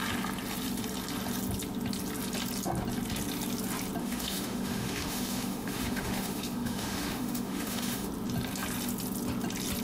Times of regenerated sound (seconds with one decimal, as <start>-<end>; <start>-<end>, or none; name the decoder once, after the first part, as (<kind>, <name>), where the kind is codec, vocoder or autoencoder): 4.0-8.1 (autoencoder, DAC-VAE)